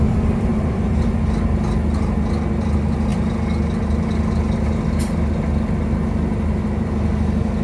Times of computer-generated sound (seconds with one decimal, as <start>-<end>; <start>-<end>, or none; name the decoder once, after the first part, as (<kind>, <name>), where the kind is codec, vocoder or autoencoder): 0.5-1.1 (vocoder, BigVGAN v2)